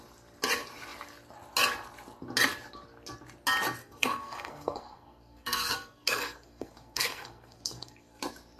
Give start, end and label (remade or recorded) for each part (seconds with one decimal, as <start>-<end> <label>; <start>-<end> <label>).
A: 0.0-3.8 recorded; 3.8-8.2 remade; 8.2-8.6 recorded